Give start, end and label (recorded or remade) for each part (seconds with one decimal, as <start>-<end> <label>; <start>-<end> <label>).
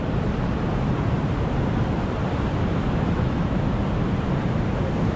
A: 0.0-2.8 recorded; 2.8-3.6 remade; 3.6-5.2 recorded